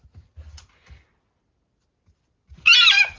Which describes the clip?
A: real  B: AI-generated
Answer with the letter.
A